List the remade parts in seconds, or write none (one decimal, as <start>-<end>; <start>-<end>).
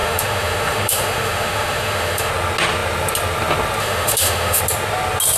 0.0-2.3; 3.8-4.6